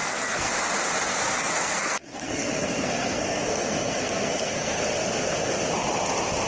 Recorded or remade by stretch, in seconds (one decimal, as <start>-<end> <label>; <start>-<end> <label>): 0.0-0.5 remade; 0.5-1.1 recorded; 1.1-4.8 remade; 4.8-6.5 recorded